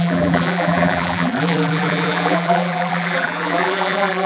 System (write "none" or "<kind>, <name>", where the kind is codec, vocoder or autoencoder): vocoder, BigVGAN v2